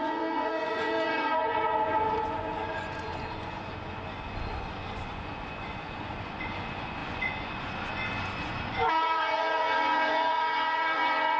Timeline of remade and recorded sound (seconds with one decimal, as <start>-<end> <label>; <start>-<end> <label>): 0.0-11.4 remade